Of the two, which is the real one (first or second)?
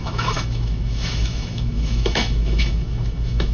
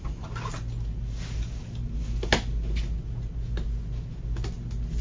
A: second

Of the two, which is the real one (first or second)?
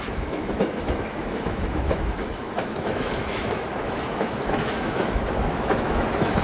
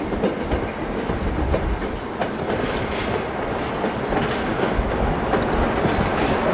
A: second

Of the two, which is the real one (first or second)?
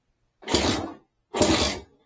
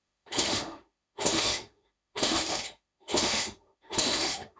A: first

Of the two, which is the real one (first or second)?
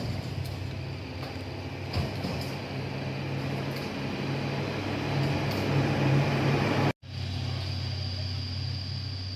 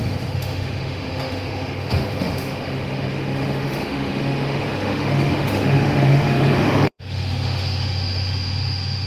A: first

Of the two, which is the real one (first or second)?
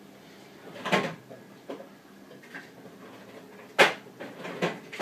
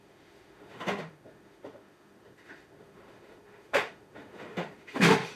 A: first